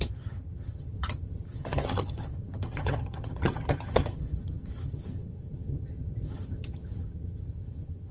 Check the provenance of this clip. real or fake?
fake